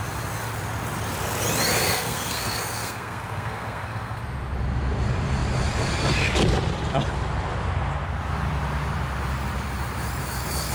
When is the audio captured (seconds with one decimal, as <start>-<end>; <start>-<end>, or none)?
0.0-1.7; 4.2-10.7